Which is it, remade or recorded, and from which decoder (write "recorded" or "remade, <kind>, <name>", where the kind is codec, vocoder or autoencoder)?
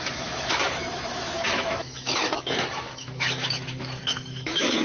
remade, autoencoder, DAC-VAE